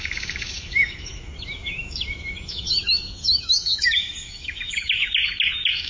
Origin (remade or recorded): remade